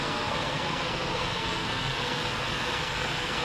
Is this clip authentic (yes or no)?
no